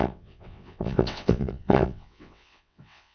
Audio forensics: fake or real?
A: fake